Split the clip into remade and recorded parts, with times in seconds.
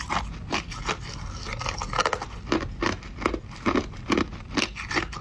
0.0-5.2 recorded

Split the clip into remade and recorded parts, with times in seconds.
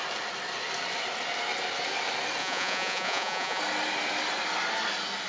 0.0-2.4 recorded; 2.4-3.6 remade; 3.6-5.3 recorded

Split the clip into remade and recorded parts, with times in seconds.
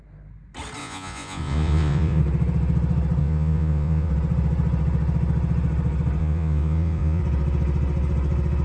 0.0-0.8 recorded; 0.8-2.2 remade; 2.2-3.2 recorded; 3.2-4.1 remade; 4.1-6.2 recorded; 6.2-7.2 remade; 7.2-8.6 recorded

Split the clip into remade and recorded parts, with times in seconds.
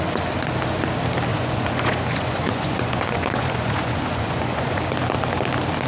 0.0-1.3 recorded; 1.3-4.8 remade; 4.8-5.9 recorded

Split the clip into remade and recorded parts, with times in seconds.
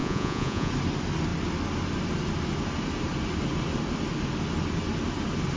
0.0-0.7 remade; 0.7-5.6 recorded